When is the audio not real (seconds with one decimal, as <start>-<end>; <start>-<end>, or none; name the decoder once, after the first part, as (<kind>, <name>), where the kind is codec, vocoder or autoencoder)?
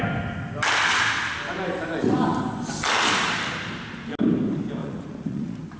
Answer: 4.8-5.8 (vocoder, Vocos)